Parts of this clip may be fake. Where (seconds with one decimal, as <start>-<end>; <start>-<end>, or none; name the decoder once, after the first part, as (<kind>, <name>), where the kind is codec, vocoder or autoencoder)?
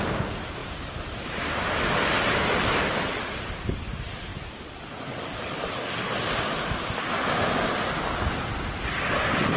none